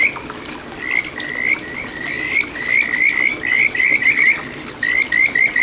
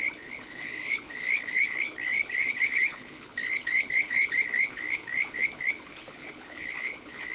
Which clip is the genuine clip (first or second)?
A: first